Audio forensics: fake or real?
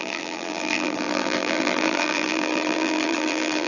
fake